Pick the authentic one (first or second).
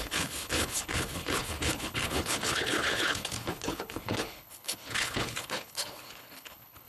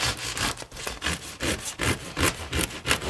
second